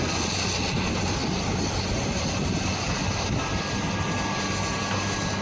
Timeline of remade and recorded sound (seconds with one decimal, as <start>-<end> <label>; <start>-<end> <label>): 0.0-5.4 recorded

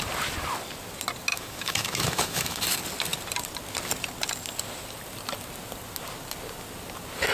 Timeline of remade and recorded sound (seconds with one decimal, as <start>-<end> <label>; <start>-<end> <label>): 0.0-1.3 recorded; 1.3-2.6 remade; 2.6-7.3 recorded

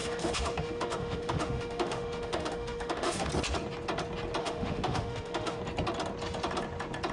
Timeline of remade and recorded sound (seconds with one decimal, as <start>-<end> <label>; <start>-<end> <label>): 0.0-3.3 remade; 3.3-4.4 recorded; 4.4-5.6 remade; 5.6-7.1 recorded

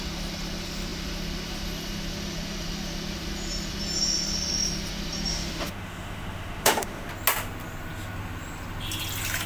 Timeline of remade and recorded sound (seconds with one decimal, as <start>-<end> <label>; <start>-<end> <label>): 0.0-5.3 recorded; 5.3-7.1 remade; 7.1-9.5 recorded